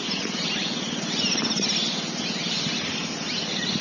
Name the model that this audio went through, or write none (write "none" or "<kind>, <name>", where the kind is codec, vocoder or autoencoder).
none